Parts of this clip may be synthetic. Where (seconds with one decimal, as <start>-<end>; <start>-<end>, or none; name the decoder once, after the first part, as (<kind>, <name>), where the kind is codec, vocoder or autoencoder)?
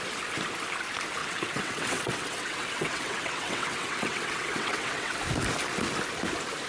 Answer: 1.2-5.2 (vocoder, WaveNeXt)